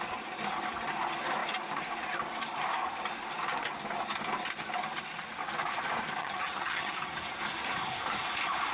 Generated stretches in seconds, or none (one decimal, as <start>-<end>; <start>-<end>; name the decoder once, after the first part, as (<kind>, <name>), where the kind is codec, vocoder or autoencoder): 6.2-7.0 (vocoder, HiFi-GAN)